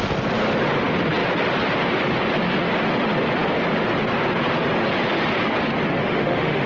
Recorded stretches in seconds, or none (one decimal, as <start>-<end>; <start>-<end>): 0.0-6.0